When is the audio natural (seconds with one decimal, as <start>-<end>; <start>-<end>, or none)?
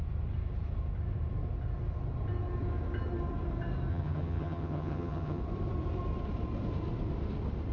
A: 0.0-3.9; 5.4-7.7